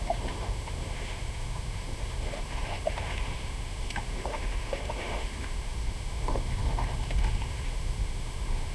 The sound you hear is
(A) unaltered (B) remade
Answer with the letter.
B